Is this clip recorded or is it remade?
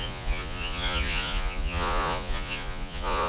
remade